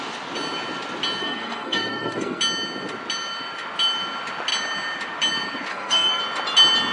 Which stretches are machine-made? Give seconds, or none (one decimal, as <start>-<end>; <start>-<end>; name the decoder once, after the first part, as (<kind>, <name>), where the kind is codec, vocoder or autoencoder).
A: 1.2-2.4 (codec, SNAC); 5.7-6.2